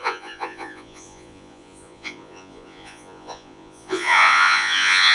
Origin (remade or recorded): remade